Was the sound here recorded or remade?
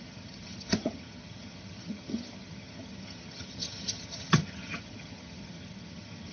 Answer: remade